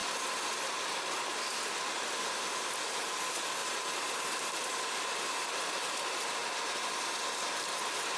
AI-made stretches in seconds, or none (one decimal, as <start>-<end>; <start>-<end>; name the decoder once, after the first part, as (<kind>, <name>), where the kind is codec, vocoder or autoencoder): 3.6-4.8 (vocoder, BigVGAN v2)